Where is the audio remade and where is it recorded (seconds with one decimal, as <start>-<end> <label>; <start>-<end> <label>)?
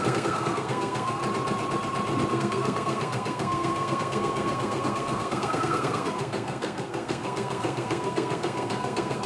0.0-1.2 remade; 1.2-2.3 recorded; 2.3-9.3 remade